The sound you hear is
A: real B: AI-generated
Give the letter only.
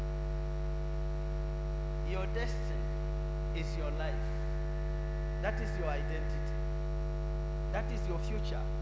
A